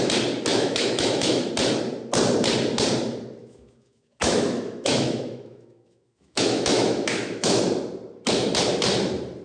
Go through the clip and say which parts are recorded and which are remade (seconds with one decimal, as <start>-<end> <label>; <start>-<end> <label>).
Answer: 0.0-0.5 recorded; 0.5-1.5 remade; 1.5-3.4 recorded; 3.4-7.6 remade; 7.6-9.4 recorded